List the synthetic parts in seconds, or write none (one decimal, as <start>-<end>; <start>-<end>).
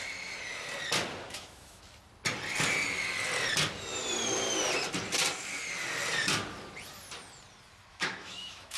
1.3-1.8; 7.9-8.8